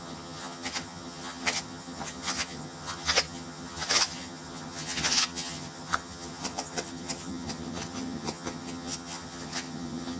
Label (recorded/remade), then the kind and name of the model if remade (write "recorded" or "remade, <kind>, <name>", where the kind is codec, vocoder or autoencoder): remade, vocoder, HiFi-GAN